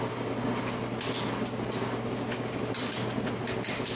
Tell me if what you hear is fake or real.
real